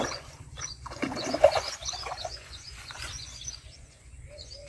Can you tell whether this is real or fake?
fake